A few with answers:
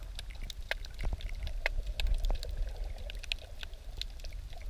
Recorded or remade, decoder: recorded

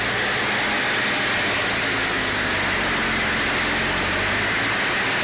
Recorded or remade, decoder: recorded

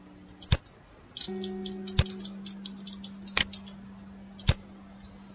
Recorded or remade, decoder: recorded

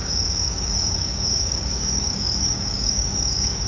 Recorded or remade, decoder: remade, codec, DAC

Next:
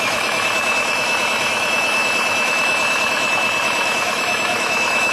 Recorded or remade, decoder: remade, autoencoder, DAC-VAE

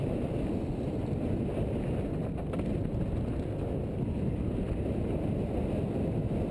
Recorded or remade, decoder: recorded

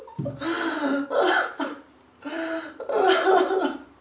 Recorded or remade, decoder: remade, vocoder, BigVGAN v2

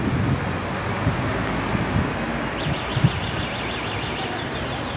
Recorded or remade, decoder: recorded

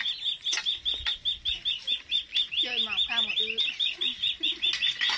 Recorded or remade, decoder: recorded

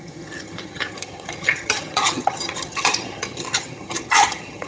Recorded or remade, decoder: remade, vocoder, HiFi-GAN